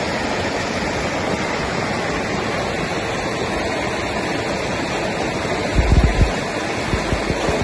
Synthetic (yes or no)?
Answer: no